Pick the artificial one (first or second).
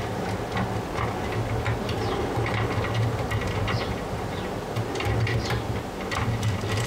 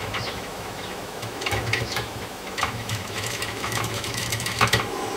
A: second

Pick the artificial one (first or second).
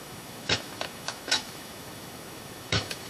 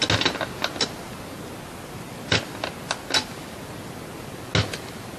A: first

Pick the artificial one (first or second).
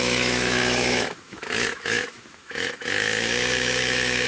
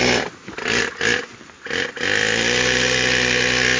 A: first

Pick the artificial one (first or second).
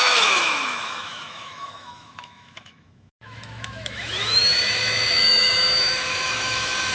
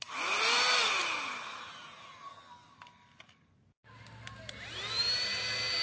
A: first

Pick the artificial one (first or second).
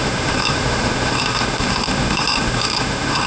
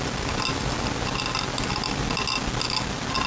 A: first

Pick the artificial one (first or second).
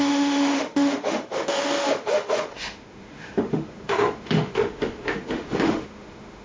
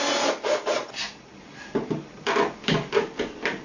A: first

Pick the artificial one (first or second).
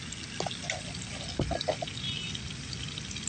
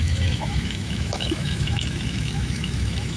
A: second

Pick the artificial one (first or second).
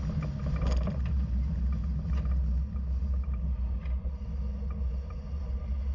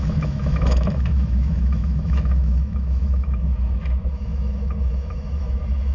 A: second